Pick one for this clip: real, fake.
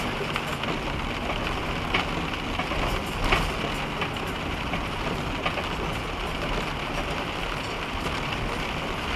real